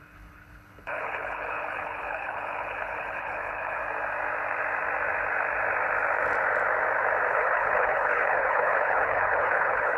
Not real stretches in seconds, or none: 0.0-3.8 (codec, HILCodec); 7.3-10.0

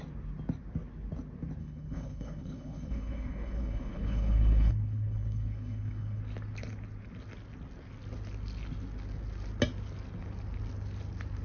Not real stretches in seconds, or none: 1.6-6.2 (codec, HILCodec)

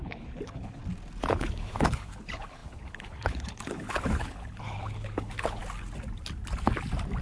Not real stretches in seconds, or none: 0.0-0.8 (codec, HILCodec); 1.3-5.6

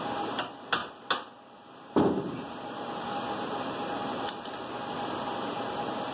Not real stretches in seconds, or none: none

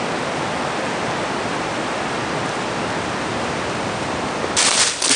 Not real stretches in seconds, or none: none

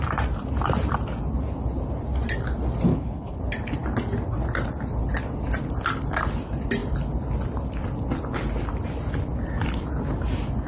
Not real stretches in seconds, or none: 2.9-3.4 (codec, HILCodec)